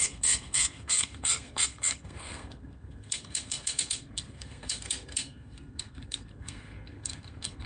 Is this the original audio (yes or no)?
no